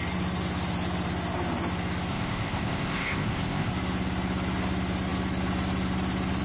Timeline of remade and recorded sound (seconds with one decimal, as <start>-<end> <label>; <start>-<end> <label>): 0.0-2.1 recorded; 2.1-3.7 remade; 3.7-6.4 recorded